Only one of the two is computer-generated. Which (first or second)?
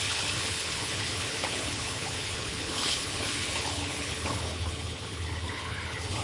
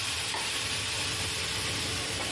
first